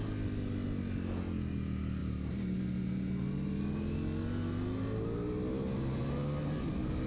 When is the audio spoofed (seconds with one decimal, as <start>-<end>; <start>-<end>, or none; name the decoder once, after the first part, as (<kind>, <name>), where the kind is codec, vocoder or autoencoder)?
none

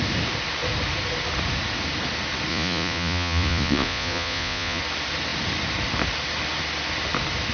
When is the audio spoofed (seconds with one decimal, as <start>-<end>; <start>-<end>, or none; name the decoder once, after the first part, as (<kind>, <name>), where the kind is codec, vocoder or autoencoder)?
2.5-4.8 (vocoder, Vocos)

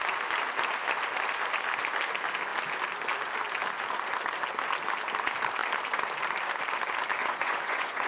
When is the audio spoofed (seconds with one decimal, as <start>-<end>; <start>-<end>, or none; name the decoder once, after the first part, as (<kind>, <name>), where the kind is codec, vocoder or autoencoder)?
7.2-8.1 (vocoder, Vocos)

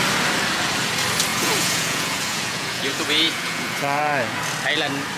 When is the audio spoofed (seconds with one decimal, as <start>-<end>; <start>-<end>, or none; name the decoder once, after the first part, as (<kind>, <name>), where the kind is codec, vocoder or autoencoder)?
1.3-4.4 (vocoder, Vocos)

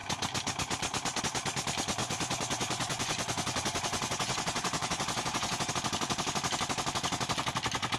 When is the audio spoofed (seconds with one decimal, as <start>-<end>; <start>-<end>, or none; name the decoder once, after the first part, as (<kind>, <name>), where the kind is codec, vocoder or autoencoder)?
2.0-5.7 (vocoder, Vocos)